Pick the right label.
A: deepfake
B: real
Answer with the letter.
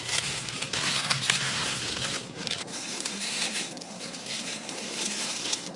A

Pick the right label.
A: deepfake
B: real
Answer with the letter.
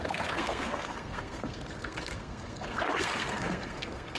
A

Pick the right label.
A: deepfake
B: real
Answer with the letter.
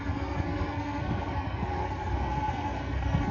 A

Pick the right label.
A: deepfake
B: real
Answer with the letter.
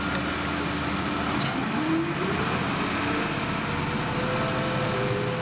B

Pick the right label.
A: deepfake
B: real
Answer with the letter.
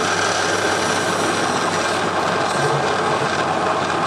B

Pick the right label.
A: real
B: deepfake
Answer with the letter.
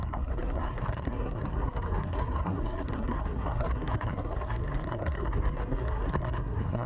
B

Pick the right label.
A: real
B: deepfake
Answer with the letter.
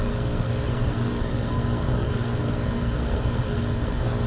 B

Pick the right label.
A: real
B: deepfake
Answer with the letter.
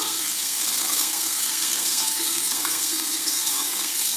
B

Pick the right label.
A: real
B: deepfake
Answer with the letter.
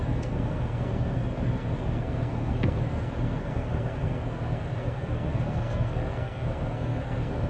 B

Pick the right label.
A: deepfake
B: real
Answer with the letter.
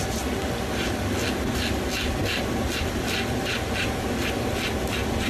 B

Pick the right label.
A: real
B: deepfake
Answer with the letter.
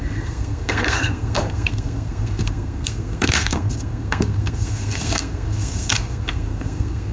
B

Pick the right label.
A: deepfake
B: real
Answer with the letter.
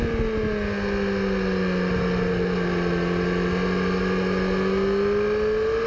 B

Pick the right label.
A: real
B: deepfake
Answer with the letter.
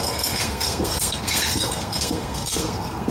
B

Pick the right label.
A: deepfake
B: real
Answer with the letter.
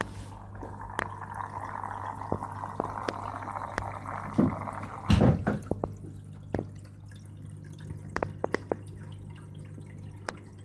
B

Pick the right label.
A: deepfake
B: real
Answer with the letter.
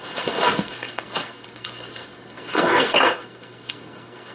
A